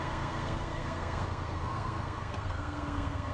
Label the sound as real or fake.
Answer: fake